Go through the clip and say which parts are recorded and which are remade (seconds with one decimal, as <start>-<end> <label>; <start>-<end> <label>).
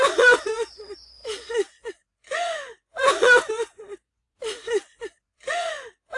0.0-6.2 remade